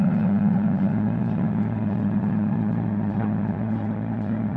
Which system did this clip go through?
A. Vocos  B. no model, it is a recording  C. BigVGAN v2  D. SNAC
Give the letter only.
A